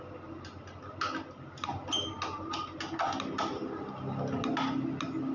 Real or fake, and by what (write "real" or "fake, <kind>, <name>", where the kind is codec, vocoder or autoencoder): real